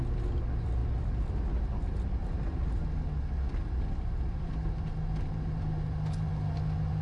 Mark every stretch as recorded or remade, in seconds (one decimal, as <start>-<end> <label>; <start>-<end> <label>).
0.0-2.2 recorded; 2.2-2.8 remade; 2.8-7.0 recorded